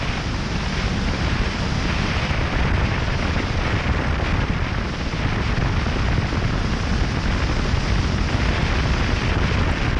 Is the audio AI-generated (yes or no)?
no